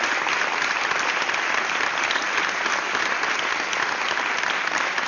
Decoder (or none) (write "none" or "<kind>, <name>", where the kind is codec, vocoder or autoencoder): none